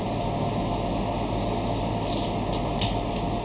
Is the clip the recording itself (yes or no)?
yes